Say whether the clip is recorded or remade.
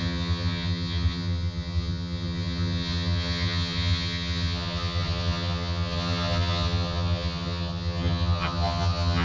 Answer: remade